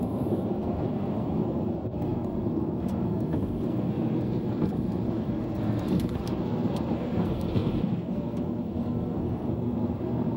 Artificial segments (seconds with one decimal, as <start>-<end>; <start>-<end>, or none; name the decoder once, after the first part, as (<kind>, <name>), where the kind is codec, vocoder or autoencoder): 0.0-10.4 (codec, SNAC)